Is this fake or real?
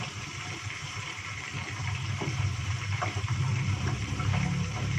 fake